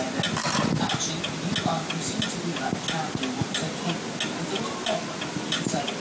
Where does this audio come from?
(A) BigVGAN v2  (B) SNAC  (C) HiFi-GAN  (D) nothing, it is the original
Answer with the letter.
D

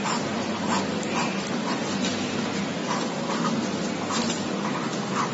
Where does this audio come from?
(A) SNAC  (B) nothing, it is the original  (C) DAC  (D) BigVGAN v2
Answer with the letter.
B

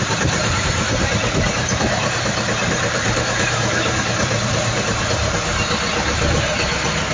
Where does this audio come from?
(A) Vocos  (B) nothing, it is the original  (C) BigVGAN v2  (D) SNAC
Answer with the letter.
C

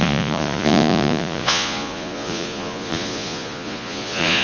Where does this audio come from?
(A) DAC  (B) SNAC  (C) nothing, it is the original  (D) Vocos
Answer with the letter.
D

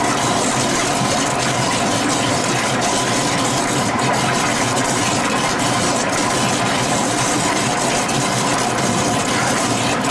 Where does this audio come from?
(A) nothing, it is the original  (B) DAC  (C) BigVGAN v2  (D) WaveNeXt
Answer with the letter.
A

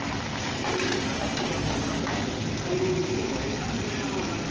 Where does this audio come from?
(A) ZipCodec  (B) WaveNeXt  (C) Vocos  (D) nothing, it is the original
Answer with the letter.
D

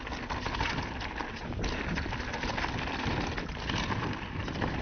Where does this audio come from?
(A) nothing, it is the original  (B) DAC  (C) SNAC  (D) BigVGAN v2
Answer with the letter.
A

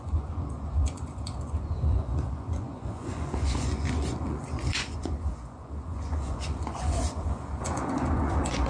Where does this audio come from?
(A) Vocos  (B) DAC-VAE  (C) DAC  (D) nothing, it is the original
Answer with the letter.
A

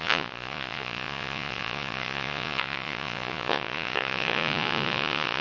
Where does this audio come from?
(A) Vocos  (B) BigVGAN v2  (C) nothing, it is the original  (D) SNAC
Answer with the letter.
A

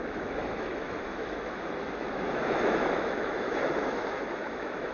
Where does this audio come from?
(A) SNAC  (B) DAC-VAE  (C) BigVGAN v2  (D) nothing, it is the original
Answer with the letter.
B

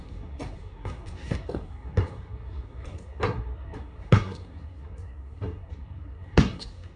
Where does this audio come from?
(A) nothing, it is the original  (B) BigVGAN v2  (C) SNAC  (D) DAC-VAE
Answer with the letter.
C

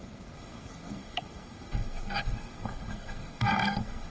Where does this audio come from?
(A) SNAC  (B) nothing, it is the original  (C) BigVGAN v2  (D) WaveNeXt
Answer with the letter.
A